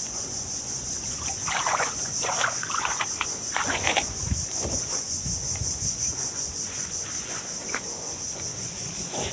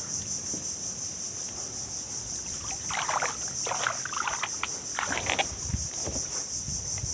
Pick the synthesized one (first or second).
first